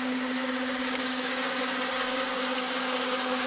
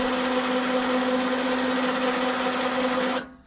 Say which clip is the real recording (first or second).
second